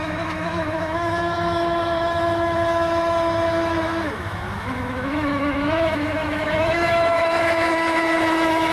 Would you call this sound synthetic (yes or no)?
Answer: yes